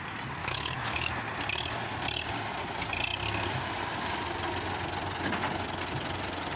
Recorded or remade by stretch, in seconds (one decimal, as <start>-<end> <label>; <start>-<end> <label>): 0.0-0.4 recorded; 0.4-1.1 remade; 1.1-6.6 recorded